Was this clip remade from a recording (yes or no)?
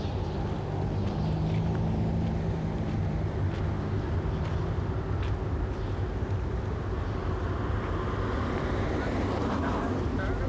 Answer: no